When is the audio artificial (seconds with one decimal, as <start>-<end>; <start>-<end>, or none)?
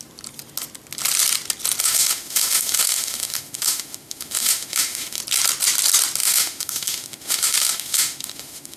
1.8-5.2; 6.2-8.8